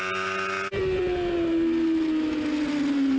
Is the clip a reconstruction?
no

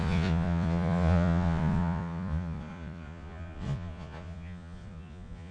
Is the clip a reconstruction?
yes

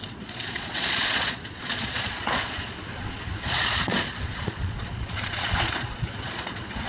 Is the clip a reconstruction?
yes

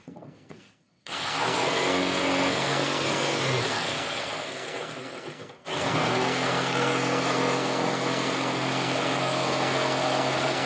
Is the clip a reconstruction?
yes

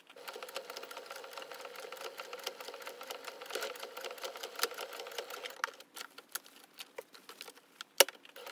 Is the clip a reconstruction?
no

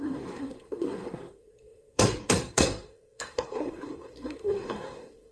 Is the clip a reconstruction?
yes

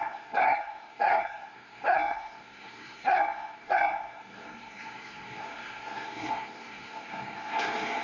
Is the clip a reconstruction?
yes